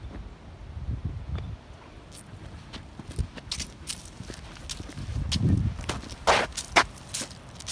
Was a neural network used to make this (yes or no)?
no